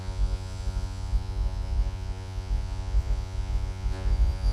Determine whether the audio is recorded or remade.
remade